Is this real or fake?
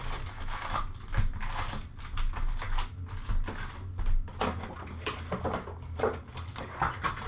real